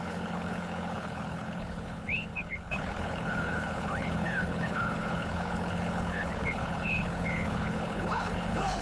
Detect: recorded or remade remade